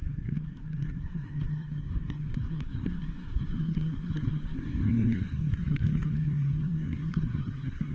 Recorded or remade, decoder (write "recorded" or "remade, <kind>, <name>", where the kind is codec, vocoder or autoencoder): remade, codec, SNAC